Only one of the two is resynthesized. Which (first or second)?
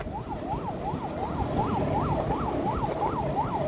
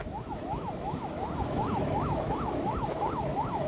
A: second